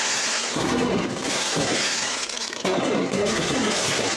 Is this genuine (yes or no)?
no